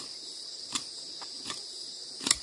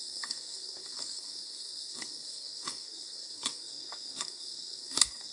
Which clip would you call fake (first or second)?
second